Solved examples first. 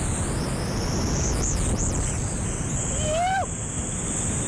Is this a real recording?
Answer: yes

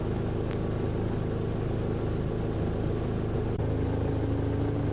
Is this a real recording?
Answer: yes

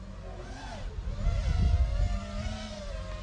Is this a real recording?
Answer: yes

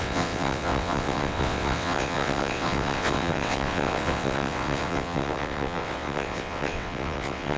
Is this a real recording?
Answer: no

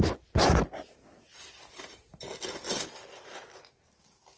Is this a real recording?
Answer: yes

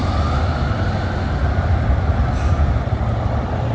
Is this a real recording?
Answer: yes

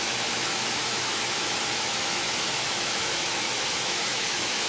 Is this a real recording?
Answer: no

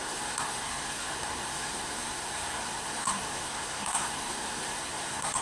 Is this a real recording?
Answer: no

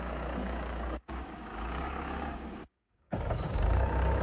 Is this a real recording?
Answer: no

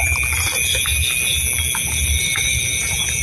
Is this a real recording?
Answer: yes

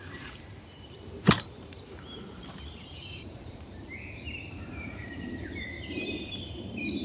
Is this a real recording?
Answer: no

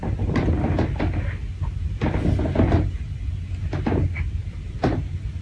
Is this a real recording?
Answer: yes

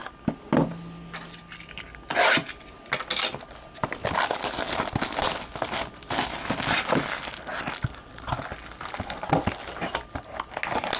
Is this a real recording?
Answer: yes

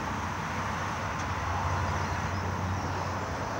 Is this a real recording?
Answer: yes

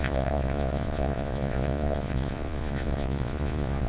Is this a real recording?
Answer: no